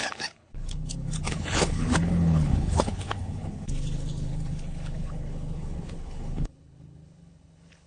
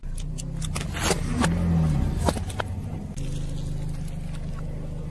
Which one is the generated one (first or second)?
first